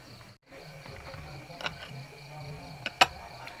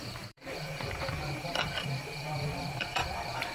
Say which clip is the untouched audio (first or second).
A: first